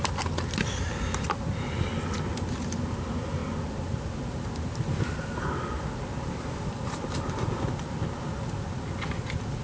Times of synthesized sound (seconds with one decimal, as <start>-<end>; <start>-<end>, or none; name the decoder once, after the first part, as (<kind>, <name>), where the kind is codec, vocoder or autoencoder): none